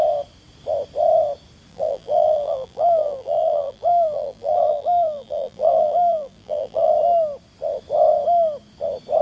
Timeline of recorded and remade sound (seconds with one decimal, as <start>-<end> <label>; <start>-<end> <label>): 0.0-1.7 recorded; 1.7-6.9 remade; 6.9-9.2 recorded